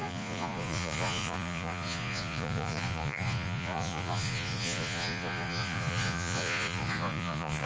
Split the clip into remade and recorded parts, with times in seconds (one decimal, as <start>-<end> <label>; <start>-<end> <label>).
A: 0.0-7.7 remade